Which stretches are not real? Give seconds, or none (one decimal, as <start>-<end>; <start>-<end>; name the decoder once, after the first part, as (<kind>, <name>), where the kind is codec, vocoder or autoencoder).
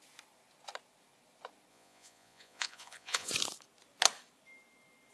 1.7-3.3 (vocoder, Vocos)